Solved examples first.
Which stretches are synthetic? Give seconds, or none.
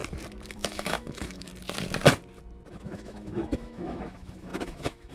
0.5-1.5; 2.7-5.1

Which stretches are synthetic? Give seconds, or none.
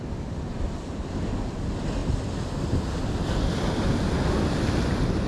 none